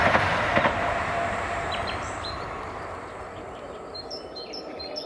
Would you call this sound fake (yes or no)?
yes